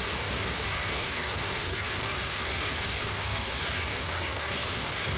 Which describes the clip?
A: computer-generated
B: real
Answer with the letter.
A